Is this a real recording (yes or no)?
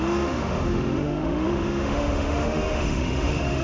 no